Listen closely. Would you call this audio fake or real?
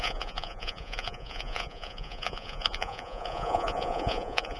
fake